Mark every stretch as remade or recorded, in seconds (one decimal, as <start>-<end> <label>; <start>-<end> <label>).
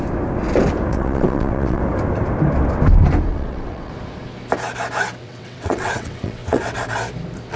0.0-0.9 recorded; 0.9-1.8 remade; 1.8-3.3 recorded; 3.3-3.9 remade; 3.9-5.2 recorded; 5.2-6.6 remade; 6.6-7.6 recorded